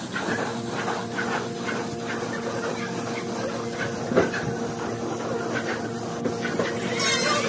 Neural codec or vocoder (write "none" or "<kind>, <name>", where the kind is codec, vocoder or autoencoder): none